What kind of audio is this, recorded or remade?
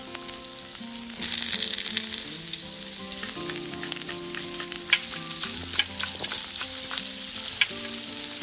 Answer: recorded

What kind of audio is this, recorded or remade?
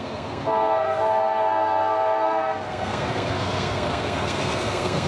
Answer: remade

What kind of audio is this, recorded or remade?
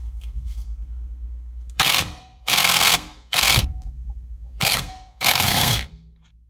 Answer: remade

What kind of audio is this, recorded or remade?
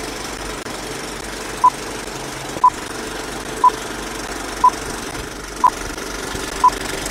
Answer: recorded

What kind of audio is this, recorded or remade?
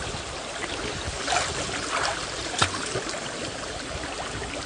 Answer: recorded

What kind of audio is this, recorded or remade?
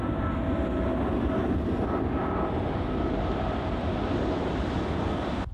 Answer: recorded